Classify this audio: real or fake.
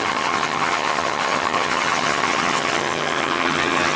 fake